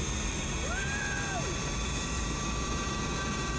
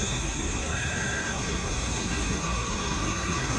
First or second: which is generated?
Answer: second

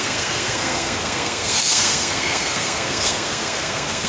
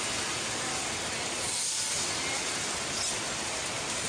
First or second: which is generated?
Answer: first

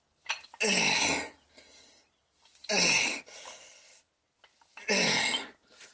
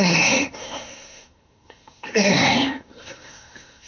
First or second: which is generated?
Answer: second